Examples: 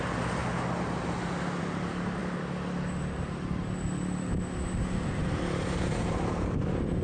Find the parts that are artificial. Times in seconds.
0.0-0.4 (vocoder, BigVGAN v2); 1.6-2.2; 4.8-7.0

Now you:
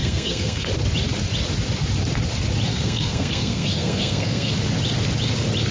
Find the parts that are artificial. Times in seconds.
0.0-0.7 (codec, SNAC); 2.7-4.5